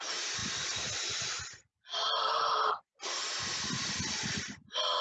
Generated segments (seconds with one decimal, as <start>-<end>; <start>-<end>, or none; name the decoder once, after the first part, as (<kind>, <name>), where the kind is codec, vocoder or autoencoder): none